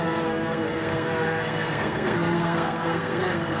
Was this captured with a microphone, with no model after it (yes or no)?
no